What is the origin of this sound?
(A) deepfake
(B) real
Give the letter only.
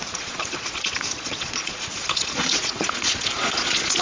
A